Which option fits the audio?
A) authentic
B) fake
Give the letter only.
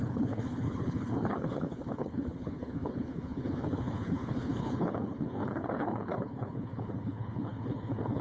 B